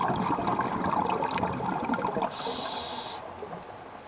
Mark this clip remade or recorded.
recorded